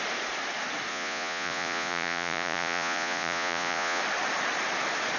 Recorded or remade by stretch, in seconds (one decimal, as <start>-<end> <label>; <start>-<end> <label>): 0.0-0.9 recorded; 0.9-4.0 remade; 4.0-5.2 recorded